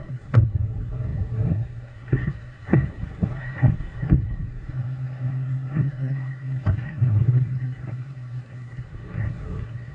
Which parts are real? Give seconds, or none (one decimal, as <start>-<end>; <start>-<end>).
none